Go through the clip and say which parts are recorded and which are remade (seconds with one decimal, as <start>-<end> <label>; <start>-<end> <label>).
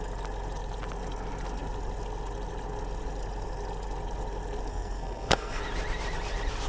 0.0-4.7 recorded; 4.7-5.6 remade; 5.6-6.7 recorded